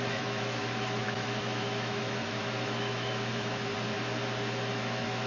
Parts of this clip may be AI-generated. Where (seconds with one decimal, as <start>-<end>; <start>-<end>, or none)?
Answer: 0.0-3.7; 4.7-5.3